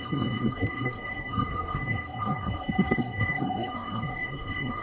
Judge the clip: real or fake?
fake